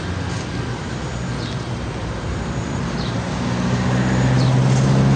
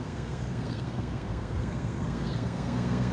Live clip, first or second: first